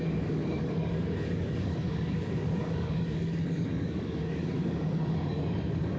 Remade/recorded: remade